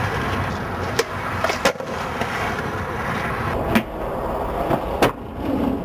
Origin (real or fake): real